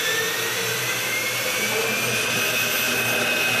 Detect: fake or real real